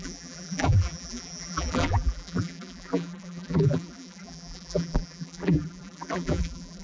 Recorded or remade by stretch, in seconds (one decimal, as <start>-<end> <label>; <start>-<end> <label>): 0.0-6.8 remade